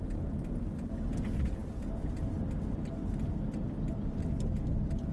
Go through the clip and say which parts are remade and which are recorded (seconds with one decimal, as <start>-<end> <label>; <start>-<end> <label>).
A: 0.0-5.1 recorded